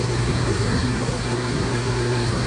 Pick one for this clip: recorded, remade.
remade